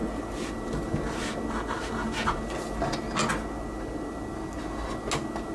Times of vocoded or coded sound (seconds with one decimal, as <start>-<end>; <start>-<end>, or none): none